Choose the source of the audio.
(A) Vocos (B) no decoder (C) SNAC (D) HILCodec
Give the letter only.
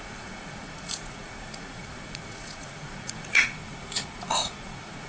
A